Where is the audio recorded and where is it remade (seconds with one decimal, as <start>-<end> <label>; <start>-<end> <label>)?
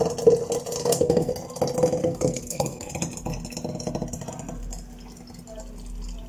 0.0-0.8 recorded; 0.8-1.3 remade; 1.3-2.0 recorded; 2.0-2.9 remade; 2.9-6.3 recorded